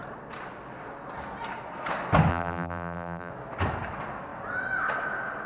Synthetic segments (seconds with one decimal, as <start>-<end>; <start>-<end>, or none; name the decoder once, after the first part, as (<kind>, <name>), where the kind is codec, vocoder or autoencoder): 2.3-3.3 (vocoder, BigVGAN v2)